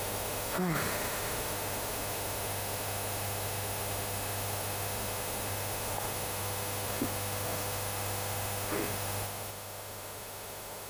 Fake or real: fake